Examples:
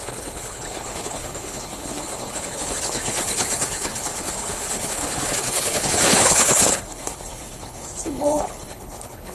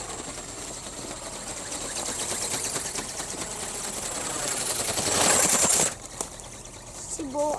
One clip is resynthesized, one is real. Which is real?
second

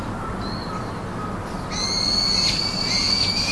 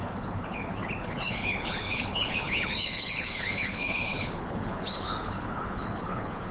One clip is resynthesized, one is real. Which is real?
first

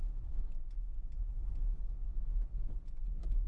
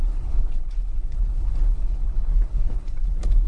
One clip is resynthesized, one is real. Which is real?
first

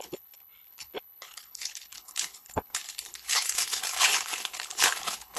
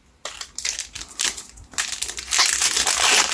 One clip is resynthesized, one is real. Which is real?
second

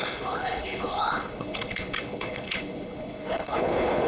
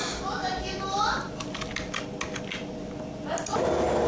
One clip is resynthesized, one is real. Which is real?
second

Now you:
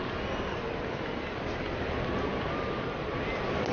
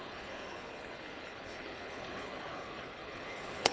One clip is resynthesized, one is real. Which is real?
first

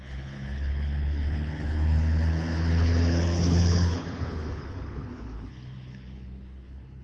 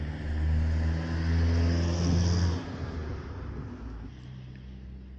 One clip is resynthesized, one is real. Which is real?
second